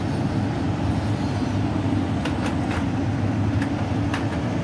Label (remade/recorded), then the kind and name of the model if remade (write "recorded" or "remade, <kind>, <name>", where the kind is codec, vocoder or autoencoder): recorded